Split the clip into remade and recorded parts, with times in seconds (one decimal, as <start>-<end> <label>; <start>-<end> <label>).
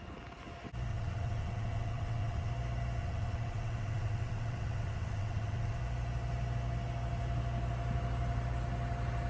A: 0.0-0.9 recorded; 0.9-2.5 remade; 2.5-3.0 recorded; 3.0-5.8 remade; 5.8-9.3 recorded